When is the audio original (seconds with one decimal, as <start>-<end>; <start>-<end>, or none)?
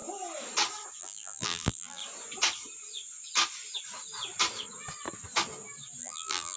0.0-1.0; 2.0-6.0